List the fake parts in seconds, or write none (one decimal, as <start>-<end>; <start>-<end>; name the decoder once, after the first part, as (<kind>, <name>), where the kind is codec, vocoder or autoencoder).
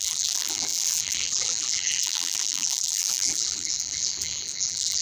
0.0-5.0 (vocoder, BigVGAN v2)